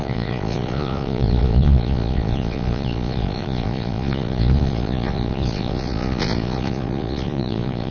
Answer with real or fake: fake